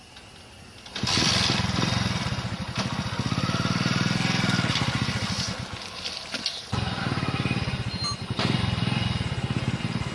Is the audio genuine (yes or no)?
yes